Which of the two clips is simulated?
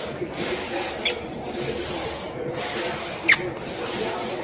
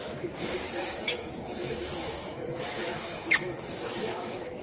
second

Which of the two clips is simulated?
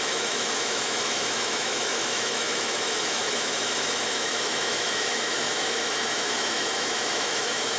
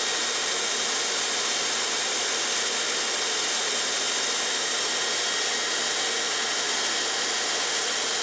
first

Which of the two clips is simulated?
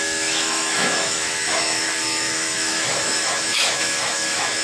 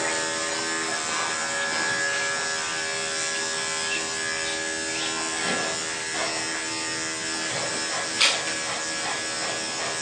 first